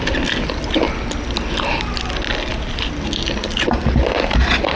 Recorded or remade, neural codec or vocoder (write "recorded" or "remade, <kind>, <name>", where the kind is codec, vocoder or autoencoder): recorded